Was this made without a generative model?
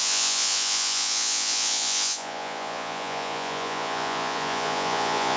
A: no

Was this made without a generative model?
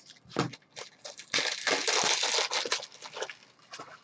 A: yes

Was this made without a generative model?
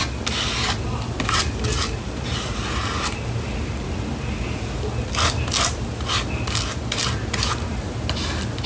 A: yes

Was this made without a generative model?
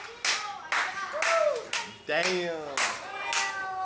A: yes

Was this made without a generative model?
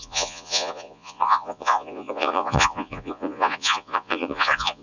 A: no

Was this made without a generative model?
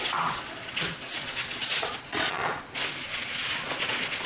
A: no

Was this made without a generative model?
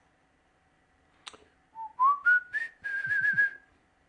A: yes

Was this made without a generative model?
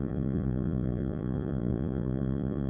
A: no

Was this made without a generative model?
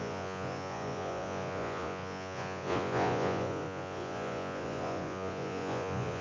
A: no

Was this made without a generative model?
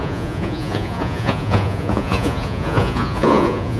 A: no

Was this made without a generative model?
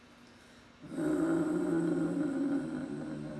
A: yes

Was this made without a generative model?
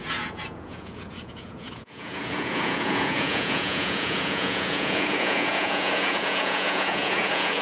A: no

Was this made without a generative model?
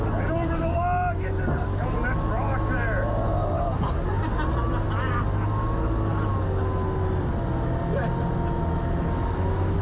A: yes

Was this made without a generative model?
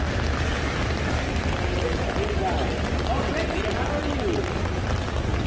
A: yes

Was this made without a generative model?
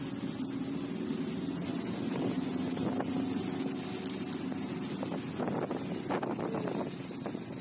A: yes